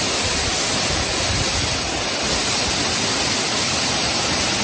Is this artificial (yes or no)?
no